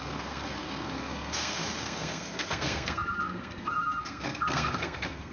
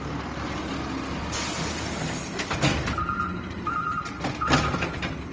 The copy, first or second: first